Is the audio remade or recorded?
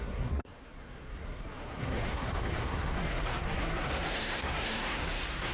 remade